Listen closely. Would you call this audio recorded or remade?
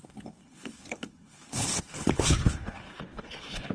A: remade